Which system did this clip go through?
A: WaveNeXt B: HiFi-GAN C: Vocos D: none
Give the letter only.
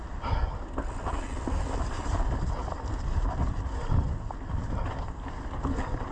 D